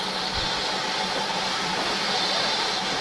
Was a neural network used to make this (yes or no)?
yes